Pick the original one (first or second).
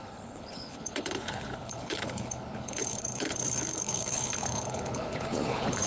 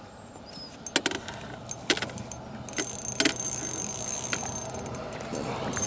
second